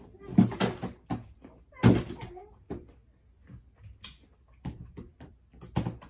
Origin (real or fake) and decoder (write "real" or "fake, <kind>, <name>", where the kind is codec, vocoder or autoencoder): real